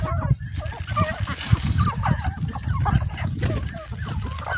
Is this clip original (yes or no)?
yes